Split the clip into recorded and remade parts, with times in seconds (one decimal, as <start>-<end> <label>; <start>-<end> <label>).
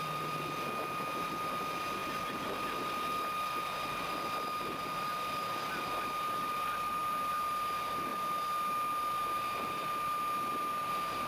0.0-11.3 recorded